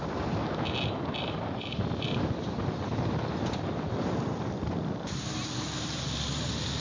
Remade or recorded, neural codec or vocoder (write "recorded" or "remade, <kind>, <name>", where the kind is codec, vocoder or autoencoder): recorded